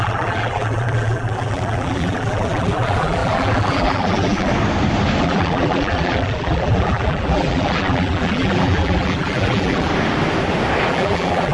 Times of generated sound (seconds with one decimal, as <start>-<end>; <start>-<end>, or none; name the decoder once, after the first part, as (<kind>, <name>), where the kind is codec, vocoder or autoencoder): 0.0-4.5 (vocoder, BigVGAN v2); 5.2-9.9; 10.9-11.5